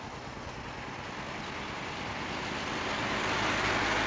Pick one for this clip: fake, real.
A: real